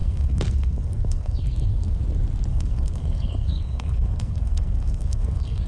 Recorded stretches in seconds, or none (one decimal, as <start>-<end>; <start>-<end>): 2.0-2.5